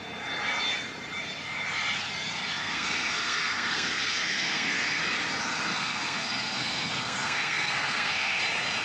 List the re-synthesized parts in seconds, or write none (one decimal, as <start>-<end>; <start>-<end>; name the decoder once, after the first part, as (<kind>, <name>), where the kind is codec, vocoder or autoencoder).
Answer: 2.6-5.0 (codec, SNAC); 5.7-8.4